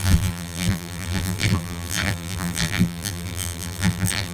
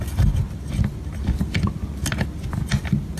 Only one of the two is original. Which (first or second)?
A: second